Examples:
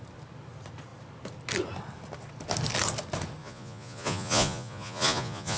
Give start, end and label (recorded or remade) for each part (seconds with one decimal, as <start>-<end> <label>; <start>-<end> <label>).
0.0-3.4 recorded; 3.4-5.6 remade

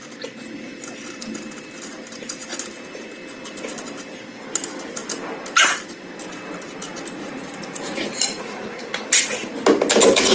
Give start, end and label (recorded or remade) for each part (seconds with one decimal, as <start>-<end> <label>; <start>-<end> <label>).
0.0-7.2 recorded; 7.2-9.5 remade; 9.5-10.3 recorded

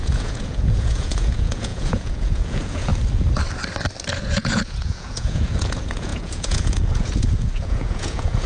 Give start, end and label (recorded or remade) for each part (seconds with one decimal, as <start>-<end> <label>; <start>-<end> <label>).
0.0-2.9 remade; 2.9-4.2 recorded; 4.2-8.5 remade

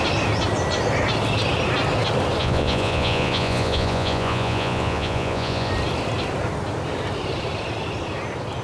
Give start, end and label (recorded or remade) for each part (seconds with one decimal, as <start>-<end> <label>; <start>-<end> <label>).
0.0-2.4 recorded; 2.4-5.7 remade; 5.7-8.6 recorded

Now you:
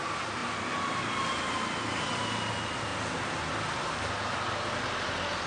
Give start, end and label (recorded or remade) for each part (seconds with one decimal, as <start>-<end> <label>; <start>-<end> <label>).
0.0-5.5 recorded